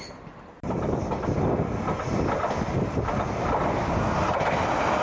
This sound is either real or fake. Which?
real